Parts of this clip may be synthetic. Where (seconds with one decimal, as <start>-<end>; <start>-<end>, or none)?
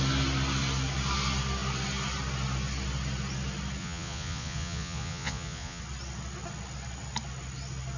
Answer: 3.8-5.8